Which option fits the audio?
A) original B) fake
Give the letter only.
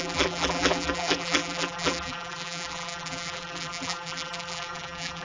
B